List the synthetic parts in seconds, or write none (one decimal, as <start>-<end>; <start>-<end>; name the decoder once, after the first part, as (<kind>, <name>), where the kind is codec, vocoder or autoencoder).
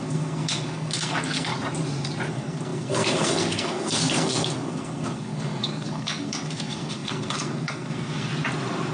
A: 0.0-1.5 (codec, SNAC); 2.3-8.3